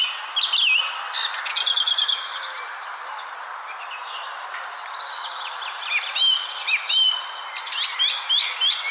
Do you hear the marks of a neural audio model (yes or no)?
no